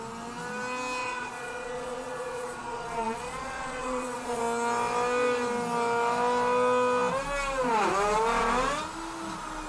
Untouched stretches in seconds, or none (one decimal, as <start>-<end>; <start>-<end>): 0.0-1.0; 4.4-9.7